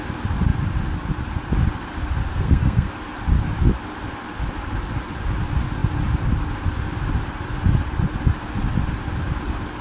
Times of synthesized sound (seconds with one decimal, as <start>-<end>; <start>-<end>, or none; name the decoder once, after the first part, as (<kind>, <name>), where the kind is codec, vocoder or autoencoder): 2.3-2.9 (codec, SNAC)